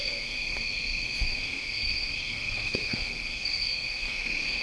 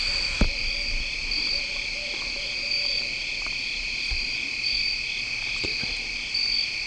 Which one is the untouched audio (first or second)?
second